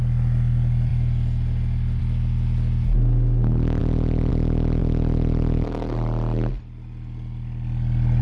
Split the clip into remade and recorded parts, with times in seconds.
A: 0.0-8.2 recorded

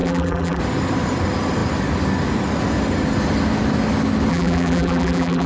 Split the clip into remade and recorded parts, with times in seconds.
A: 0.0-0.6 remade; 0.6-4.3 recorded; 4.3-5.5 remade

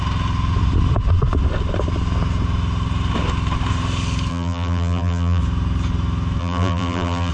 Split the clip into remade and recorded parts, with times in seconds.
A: 0.0-4.3 recorded; 4.3-5.4 remade; 5.4-6.4 recorded; 6.4-7.3 remade

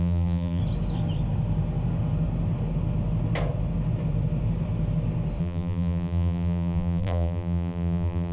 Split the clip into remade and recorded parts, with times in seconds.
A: 0.0-0.6 remade; 0.6-5.4 recorded; 5.4-8.3 remade

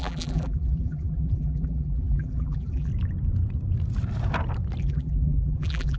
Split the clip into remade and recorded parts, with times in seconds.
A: 0.0-2.9 remade; 2.9-4.8 recorded; 4.8-6.0 remade